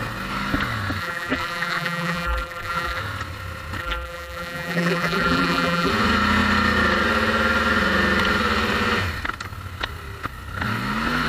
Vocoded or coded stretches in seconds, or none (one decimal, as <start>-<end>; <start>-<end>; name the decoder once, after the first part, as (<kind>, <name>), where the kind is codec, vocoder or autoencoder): 1.0-3.0 (vocoder, BigVGAN v2); 3.8-5.9